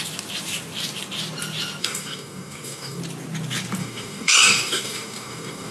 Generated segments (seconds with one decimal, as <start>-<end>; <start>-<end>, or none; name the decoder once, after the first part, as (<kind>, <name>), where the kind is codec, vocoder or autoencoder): 1.8-3.0 (codec, DAC); 3.8-5.7